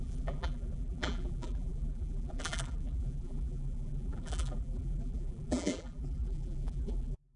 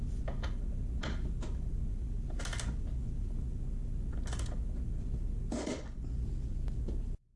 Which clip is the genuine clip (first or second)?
second